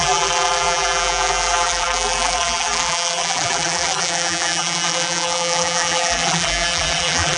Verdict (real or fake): fake